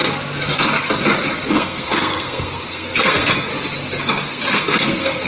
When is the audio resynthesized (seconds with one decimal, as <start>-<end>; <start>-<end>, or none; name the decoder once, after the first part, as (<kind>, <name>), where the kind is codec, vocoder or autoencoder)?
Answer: 1.5-3.5 (codec, SNAC); 4.0-5.3